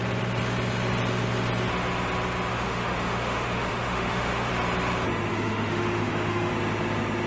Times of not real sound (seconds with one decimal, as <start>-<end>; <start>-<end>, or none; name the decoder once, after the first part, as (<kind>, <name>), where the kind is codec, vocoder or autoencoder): 2.5-4.5 (autoencoder, DAC-VAE); 5.3-6.5